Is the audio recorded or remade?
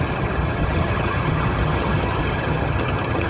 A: remade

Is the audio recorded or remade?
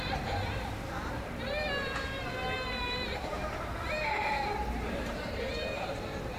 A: remade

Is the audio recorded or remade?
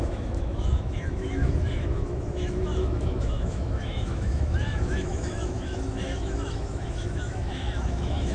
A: remade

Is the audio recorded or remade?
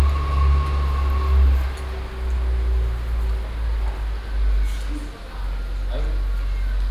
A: recorded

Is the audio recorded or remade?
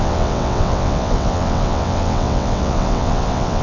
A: remade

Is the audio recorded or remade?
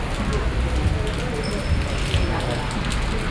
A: recorded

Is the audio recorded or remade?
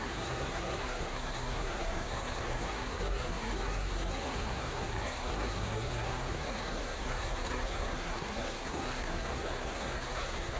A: remade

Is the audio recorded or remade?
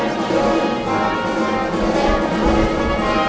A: recorded